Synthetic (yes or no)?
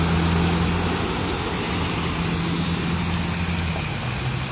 no